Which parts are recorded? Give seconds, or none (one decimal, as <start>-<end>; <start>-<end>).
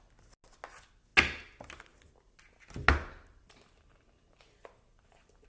0.0-5.5